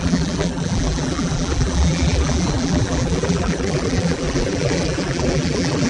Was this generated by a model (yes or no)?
yes